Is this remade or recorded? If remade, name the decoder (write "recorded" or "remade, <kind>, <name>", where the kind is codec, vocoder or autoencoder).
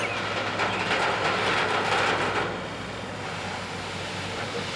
recorded